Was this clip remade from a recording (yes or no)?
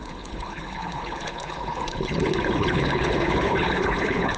yes